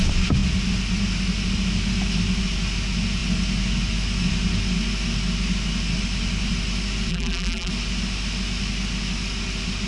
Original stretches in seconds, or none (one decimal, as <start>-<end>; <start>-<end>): 0.0-7.1; 7.7-9.9